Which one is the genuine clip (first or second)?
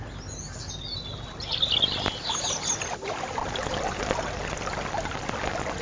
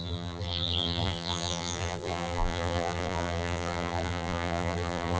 first